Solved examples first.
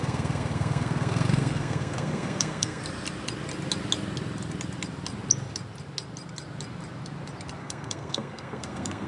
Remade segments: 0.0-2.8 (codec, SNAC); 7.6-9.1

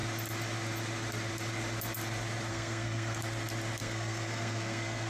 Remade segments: 2.5-3.2 (codec, SNAC); 3.8-5.1

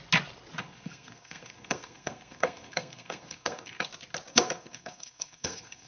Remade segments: 0.6-3.9 (codec, SNAC); 4.3-5.9

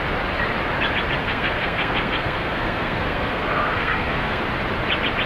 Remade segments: 1.2-4.4 (codec, SNAC)

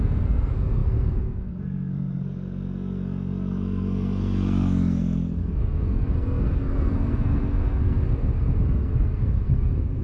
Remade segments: 0.0-10.0 (codec, SNAC)

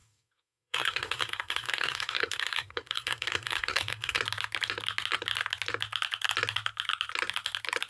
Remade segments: 0.0-4.2 (codec, SNAC)

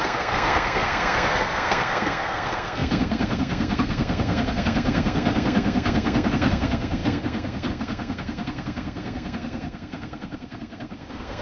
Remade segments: 0.0-11.4 (codec, SNAC)

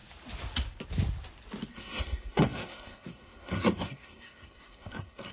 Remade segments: 1.7-5.3 (codec, SNAC)